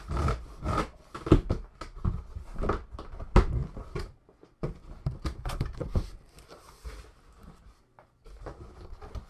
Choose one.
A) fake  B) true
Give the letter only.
B